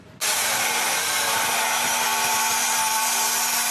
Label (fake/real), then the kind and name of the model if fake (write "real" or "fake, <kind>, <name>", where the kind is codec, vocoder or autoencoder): real